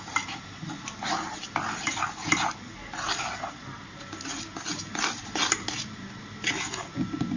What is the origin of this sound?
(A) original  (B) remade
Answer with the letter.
A